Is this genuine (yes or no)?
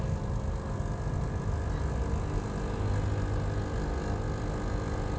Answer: yes